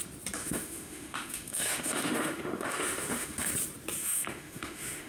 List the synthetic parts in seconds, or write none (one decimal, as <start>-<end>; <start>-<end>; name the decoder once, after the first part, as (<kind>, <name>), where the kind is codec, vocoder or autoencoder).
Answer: 0.4-3.5 (autoencoder, DAC-VAE); 4.0-5.1